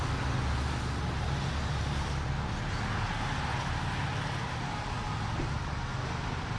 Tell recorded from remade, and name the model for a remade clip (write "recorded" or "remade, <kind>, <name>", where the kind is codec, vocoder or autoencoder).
recorded